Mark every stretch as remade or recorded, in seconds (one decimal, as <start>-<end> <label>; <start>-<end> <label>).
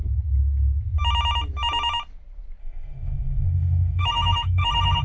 0.0-2.6 recorded; 2.6-5.0 remade